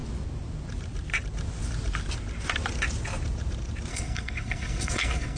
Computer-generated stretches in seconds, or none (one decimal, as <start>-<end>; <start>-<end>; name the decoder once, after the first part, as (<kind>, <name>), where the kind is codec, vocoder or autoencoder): 3.9-5.4 (codec, SNAC)